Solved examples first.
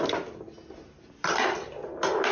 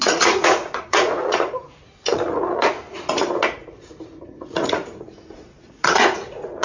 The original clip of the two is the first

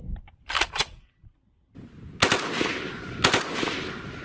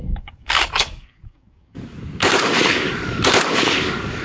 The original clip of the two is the first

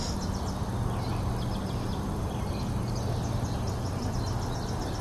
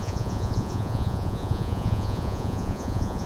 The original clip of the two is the first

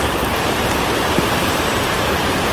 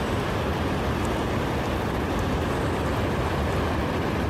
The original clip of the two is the second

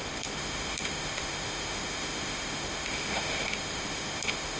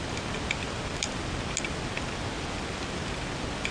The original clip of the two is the second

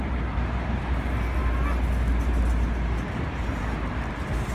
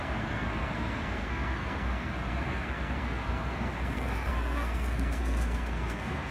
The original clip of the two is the first